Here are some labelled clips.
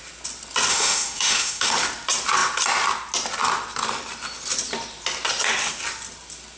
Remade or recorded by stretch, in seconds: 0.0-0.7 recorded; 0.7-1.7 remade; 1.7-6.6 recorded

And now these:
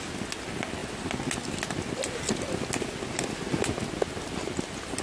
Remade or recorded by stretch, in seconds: 0.0-5.0 recorded

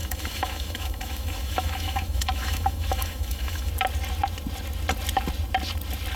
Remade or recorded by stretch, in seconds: 0.0-3.7 remade; 3.7-6.2 recorded

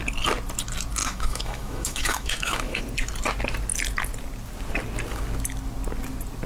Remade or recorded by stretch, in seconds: 0.0-1.0 recorded; 1.0-2.8 remade; 2.8-6.5 recorded

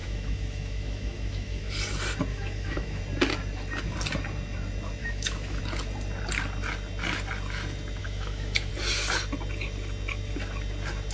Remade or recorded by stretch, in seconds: 0.0-1.7 remade; 1.7-2.3 recorded; 2.3-3.0 remade; 3.0-5.0 recorded; 5.0-5.6 remade; 5.6-8.0 recorded; 8.0-8.7 remade; 8.7-11.1 recorded

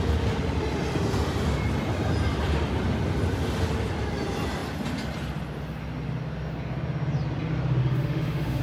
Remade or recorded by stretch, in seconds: 0.0-7.8 recorded; 7.8-8.6 remade